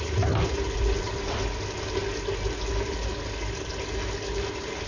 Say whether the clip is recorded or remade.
recorded